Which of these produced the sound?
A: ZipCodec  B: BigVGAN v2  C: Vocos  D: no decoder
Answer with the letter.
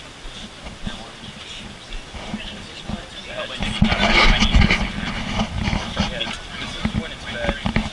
D